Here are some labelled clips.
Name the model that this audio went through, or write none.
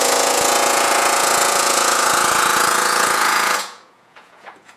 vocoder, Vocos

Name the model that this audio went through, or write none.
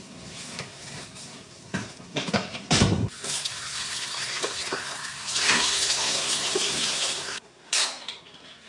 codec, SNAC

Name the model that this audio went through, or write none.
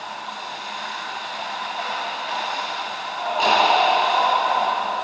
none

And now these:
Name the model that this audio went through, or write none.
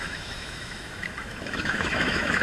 autoencoder, DAC-VAE